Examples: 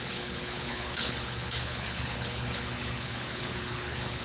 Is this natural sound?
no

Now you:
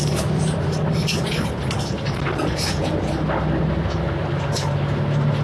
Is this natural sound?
yes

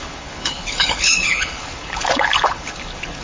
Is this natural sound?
no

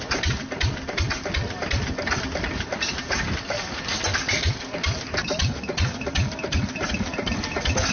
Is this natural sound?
yes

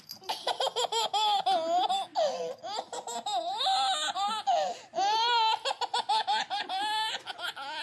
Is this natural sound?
yes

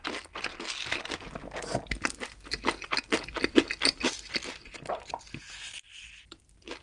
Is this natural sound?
yes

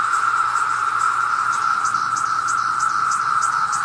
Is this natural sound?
yes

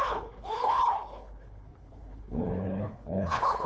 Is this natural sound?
no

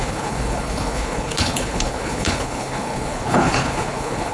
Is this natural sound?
no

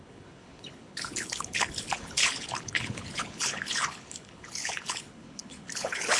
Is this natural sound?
no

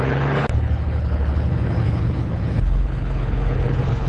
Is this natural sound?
no